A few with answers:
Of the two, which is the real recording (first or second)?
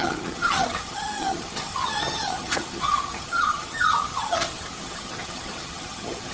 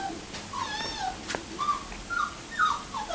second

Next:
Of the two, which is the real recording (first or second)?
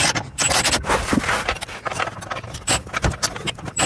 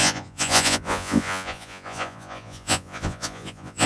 first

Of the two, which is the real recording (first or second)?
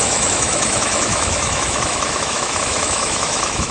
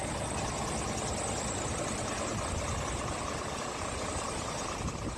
second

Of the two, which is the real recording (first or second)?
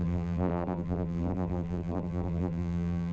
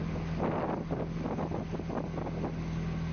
second